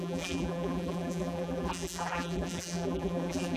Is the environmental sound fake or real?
fake